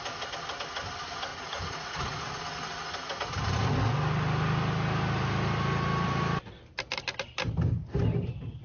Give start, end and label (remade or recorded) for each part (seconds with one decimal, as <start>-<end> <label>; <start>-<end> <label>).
0.0-1.3 recorded; 1.3-2.4 remade; 2.4-8.6 recorded